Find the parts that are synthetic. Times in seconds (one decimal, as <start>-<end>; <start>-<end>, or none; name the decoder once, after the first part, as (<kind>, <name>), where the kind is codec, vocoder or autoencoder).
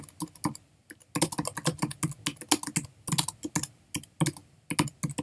none